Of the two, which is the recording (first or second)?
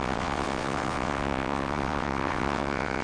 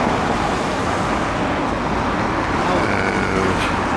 second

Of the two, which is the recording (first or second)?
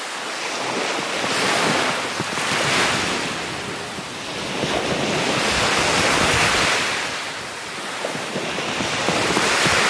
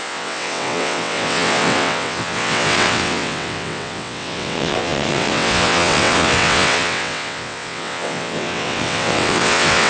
first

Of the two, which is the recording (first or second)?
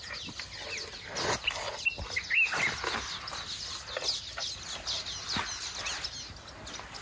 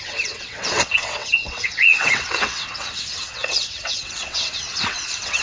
first